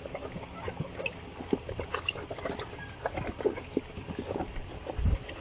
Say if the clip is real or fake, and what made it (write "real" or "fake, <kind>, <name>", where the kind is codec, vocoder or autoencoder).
real